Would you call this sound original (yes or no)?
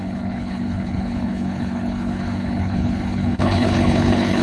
no